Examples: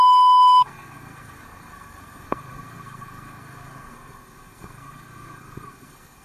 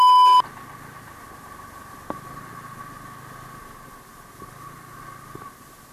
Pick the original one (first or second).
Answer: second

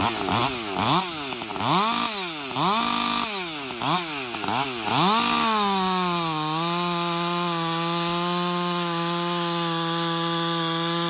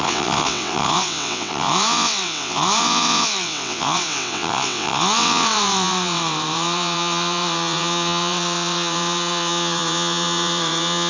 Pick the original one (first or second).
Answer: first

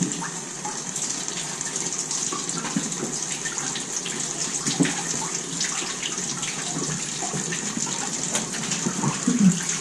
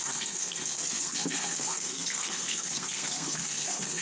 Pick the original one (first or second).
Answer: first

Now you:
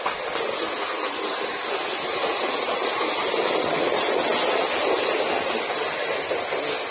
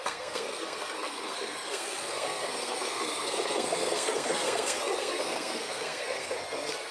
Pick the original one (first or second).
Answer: first